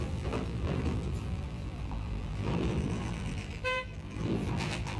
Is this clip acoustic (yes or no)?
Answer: no